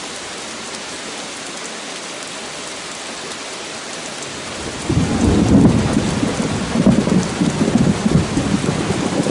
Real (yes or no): yes